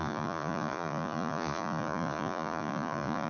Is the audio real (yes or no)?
no